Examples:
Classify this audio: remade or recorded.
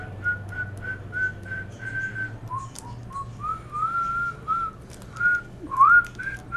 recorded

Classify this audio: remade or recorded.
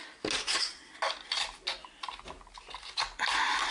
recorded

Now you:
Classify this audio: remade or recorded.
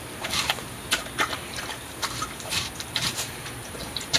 remade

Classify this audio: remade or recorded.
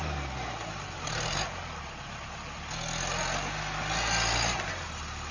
recorded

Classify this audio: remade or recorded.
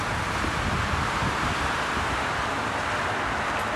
recorded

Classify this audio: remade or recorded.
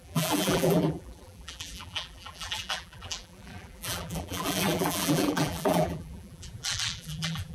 remade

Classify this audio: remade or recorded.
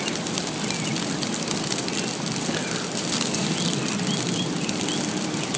remade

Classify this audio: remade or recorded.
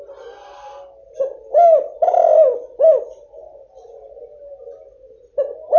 recorded